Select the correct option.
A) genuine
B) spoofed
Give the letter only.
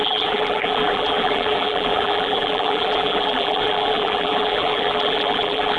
B